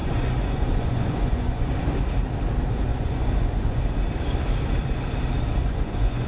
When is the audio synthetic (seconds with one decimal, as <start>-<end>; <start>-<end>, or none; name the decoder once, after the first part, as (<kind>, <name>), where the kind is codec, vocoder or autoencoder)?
0.0-1.7 (vocoder, Vocos); 2.9-3.8; 5.6-6.3